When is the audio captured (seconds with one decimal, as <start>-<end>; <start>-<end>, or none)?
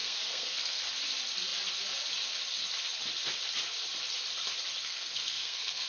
0.8-4.8